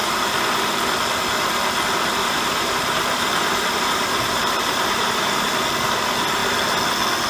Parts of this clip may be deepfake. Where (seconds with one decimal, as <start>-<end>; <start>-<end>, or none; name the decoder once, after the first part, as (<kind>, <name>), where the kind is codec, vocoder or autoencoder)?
2.2-5.5 (vocoder, BigVGAN v2)